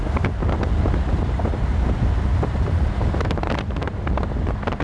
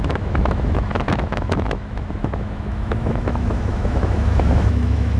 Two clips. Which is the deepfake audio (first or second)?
second